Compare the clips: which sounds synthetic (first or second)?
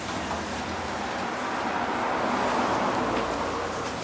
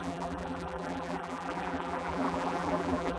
second